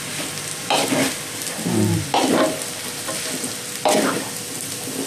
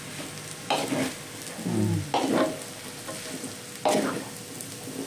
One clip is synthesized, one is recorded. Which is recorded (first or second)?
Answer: second